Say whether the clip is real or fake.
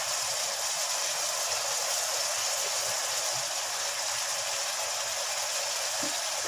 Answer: real